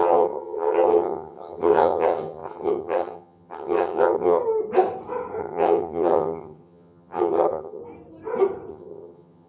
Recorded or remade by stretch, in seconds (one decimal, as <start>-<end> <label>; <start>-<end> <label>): 0.0-4.4 remade; 4.4-5.4 recorded; 5.4-7.8 remade; 7.8-8.7 recorded; 8.7-9.5 remade